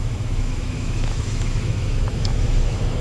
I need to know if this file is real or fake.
fake